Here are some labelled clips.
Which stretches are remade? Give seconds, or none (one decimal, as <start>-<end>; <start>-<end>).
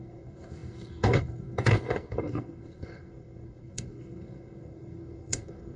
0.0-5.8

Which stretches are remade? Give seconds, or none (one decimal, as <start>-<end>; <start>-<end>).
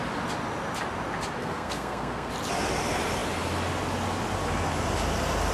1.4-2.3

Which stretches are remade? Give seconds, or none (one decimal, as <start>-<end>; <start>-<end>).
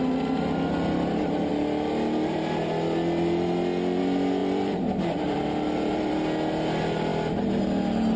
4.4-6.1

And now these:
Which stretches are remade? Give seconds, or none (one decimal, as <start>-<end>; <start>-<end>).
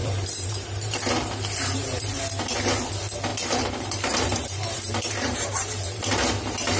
0.0-2.1; 3.3-6.0